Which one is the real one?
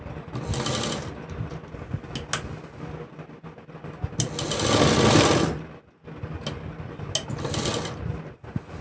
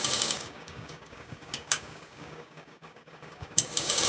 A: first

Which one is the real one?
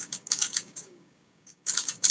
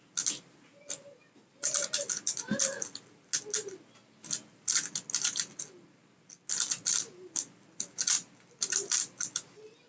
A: second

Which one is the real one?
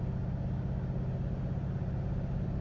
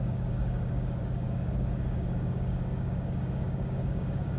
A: first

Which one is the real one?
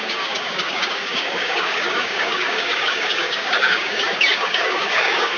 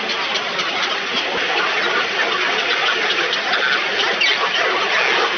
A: second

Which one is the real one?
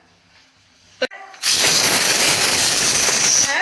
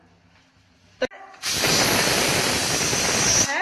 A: second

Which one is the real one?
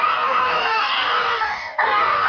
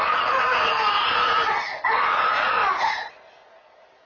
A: second